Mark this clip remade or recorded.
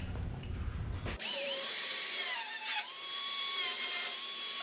remade